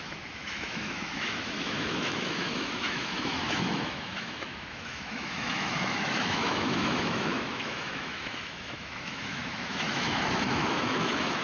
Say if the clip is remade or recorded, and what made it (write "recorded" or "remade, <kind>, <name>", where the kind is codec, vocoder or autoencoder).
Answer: remade, autoencoder, DAC-VAE